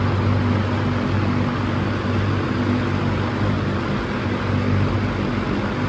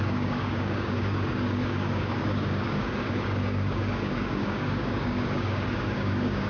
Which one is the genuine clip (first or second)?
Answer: first